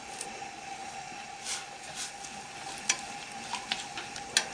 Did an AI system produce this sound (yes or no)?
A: no